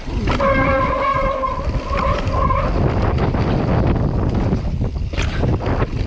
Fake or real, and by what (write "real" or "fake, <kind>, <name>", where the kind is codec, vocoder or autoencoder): real